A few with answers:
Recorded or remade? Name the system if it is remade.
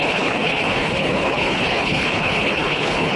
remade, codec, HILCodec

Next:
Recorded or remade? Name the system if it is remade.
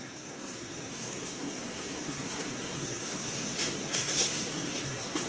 remade, codec, SNAC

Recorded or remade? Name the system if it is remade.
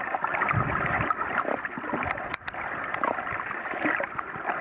remade, vocoder, BigVGAN v2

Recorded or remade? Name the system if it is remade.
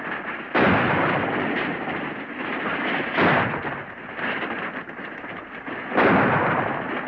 recorded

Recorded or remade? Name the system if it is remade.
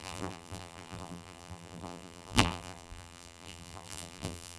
remade, vocoder, BigVGAN v2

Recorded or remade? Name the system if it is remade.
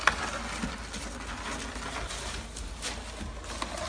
recorded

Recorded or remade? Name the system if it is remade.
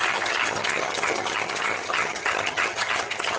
remade, vocoder, HiFi-GAN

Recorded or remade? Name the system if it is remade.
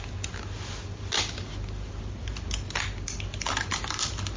recorded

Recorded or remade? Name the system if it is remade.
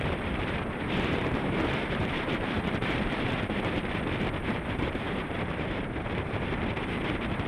remade, vocoder, BigVGAN v2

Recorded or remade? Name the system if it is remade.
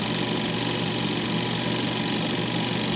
recorded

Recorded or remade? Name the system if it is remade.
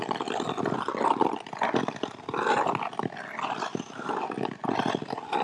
recorded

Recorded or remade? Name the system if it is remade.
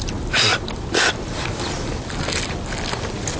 recorded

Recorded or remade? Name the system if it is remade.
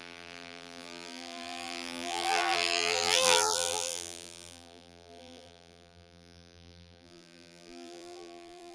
remade, vocoder, BigVGAN v2